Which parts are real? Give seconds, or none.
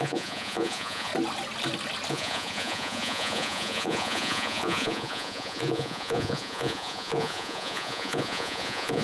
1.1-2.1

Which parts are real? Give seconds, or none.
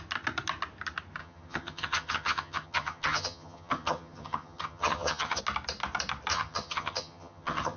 0.0-1.2; 5.4-6.3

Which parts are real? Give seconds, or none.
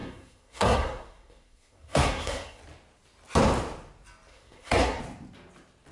2.6-4.3; 5.0-5.9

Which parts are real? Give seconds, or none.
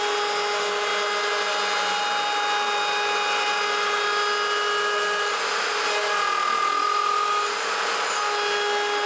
0.0-9.1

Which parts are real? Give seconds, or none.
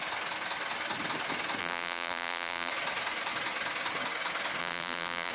0.0-1.6; 2.7-4.6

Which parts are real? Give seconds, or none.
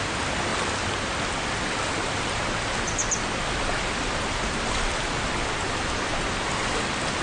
0.0-7.2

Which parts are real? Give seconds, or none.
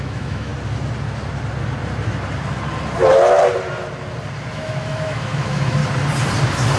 0.5-4.5; 5.8-6.8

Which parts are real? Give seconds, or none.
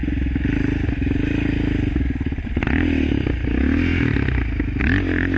0.0-5.4